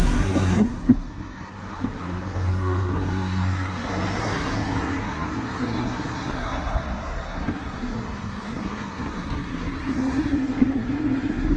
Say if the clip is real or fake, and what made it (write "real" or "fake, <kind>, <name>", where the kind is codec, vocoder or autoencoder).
fake, codec, SNAC